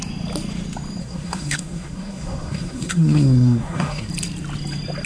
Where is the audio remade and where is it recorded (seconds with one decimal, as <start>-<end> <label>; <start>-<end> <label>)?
0.0-1.0 recorded; 1.0-4.1 remade; 4.1-5.1 recorded